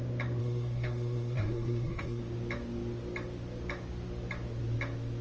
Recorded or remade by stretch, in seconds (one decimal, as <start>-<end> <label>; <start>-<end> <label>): 0.0-0.4 recorded; 0.4-2.2 remade; 2.2-5.2 recorded